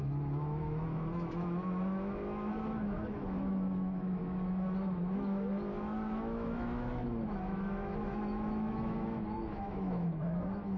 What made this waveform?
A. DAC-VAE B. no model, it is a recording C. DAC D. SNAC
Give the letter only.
A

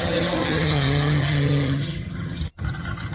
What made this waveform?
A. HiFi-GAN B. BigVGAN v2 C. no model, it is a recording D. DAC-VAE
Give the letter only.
A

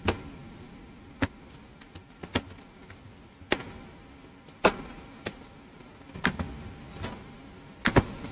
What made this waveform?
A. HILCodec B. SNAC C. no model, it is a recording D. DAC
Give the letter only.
C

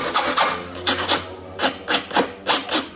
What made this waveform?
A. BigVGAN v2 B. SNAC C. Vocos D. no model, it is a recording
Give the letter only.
D